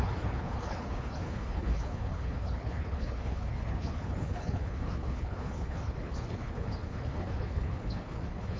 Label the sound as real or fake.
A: fake